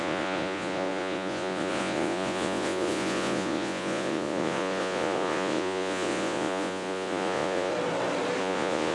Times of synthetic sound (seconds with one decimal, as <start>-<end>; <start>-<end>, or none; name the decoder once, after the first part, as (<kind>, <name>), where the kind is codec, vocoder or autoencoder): 0.0-7.7 (vocoder, Vocos); 8.4-8.9